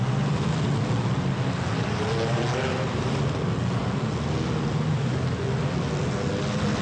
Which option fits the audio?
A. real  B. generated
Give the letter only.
A